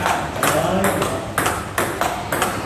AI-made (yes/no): no